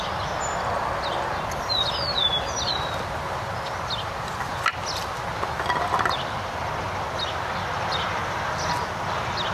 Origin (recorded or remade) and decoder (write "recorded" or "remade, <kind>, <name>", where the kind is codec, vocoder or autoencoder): recorded